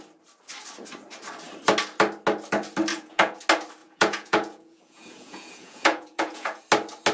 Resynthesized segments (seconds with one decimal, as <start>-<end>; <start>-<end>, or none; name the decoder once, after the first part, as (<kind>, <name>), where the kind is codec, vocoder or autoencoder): 2.9-3.4 (vocoder, Vocos); 3.8-6.6